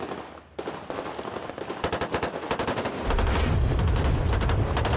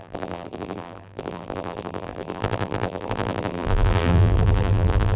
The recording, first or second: first